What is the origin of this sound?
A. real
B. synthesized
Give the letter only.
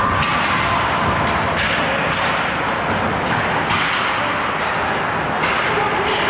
A